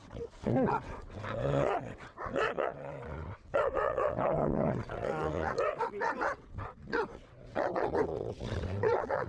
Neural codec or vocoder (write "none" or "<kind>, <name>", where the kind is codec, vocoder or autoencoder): vocoder, WaveNeXt